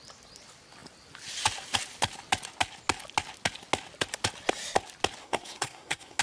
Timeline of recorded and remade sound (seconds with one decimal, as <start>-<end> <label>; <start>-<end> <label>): 0.0-5.2 recorded; 5.2-6.2 remade